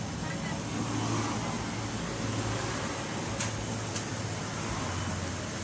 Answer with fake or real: real